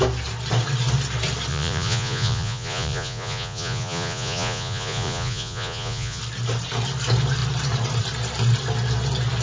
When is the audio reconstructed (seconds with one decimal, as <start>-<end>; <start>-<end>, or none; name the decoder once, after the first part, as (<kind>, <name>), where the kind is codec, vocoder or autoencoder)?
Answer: 1.5-6.2 (vocoder, Vocos)